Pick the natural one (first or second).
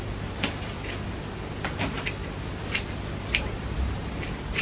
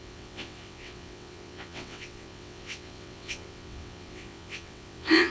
first